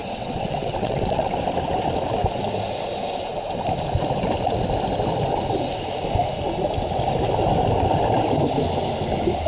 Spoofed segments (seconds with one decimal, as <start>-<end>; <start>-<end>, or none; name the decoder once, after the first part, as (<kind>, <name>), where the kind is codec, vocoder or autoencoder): 0.0-1.3 (vocoder, WaveNeXt)